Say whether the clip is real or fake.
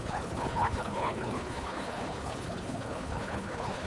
fake